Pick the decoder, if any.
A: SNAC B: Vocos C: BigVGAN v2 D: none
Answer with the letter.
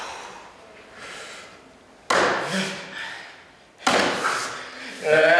D